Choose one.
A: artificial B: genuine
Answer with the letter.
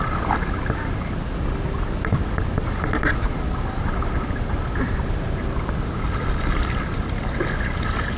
B